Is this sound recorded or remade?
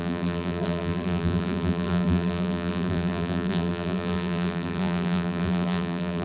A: remade